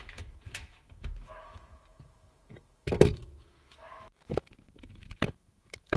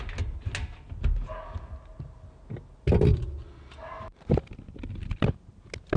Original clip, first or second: second